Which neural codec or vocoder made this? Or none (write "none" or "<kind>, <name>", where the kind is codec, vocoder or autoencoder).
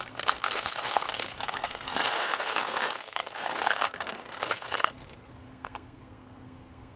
codec, SNAC